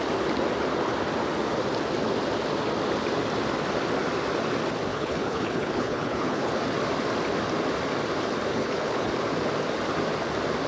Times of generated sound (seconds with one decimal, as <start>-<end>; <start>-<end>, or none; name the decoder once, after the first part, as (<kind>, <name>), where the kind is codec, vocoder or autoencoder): 4.9-6.5 (codec, HILCodec); 8.5-9.1